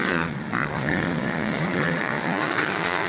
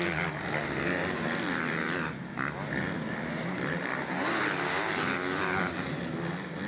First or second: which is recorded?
second